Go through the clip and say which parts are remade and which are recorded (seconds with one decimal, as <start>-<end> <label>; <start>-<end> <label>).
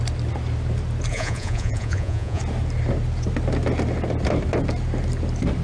0.0-1.1 recorded; 1.1-2.4 remade; 2.4-5.6 recorded